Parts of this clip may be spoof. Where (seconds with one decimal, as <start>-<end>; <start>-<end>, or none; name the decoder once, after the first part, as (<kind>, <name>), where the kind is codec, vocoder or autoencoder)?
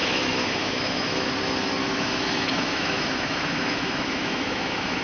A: 0.0-1.3 (autoencoder, DAC-VAE); 1.8-5.0